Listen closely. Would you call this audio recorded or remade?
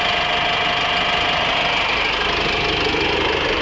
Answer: recorded